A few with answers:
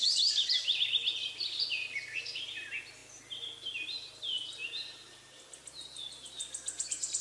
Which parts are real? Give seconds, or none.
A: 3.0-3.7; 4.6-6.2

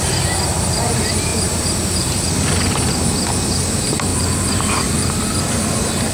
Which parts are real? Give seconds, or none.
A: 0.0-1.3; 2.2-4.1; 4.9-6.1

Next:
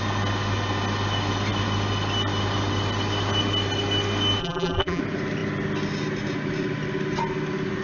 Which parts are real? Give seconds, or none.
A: 0.0-4.4; 5.0-7.8

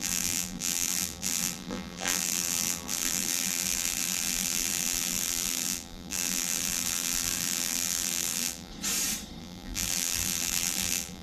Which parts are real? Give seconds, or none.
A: 8.7-9.4

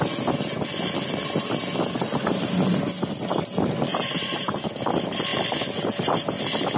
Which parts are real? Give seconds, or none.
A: 0.0-3.9; 4.7-6.8